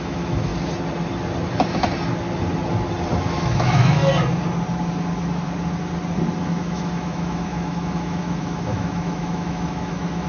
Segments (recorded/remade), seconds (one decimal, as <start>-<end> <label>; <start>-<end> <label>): 0.0-0.5 remade; 0.5-3.2 recorded; 3.2-4.0 remade; 4.0-6.4 recorded; 6.4-10.3 remade

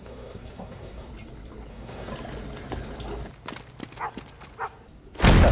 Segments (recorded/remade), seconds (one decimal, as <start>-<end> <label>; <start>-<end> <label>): 0.0-1.1 remade; 1.1-1.7 recorded; 1.7-2.1 remade; 2.1-5.5 recorded

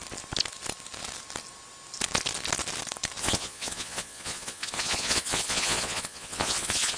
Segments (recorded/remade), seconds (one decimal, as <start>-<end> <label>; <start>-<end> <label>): 0.0-3.2 recorded; 3.2-7.0 remade

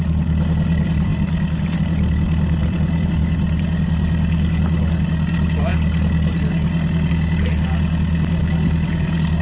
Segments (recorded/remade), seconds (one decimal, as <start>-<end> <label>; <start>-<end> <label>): 0.0-2.6 recorded; 2.6-3.1 remade; 3.1-9.4 recorded

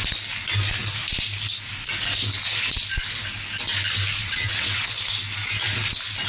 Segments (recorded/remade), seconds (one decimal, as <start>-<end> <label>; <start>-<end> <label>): 0.0-4.2 recorded; 4.2-4.8 remade; 4.8-6.3 recorded

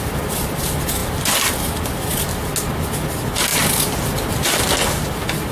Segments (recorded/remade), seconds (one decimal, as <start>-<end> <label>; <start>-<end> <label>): 0.0-5.5 recorded

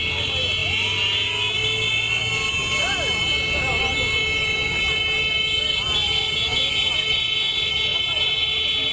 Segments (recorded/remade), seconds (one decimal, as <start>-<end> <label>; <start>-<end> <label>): 0.0-8.9 recorded

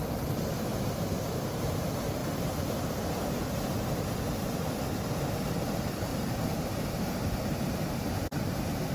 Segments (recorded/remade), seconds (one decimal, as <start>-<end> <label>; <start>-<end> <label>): 0.0-2.2 recorded; 2.2-3.9 remade; 3.9-6.1 recorded; 6.1-8.2 remade; 8.2-8.9 recorded